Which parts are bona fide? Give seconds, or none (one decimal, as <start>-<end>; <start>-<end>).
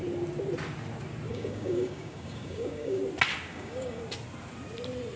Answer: 0.0-1.3; 3.0-3.5; 4.0-5.2